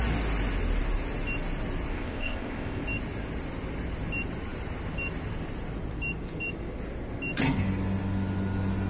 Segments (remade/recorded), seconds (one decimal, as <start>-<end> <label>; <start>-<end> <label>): 0.0-1.9 recorded; 1.9-2.8 remade; 2.8-8.9 recorded